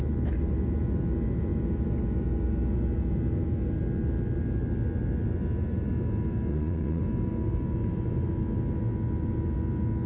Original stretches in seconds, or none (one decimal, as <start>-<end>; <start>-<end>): 0.0-6.5; 7.0-10.1